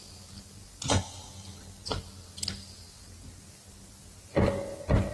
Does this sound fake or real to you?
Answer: real